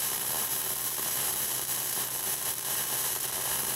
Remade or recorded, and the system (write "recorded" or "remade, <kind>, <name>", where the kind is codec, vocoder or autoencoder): remade, vocoder, BigVGAN v2